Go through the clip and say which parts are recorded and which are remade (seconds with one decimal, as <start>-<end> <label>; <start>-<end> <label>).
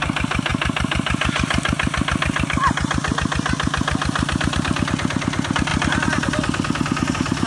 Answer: 0.0-7.5 recorded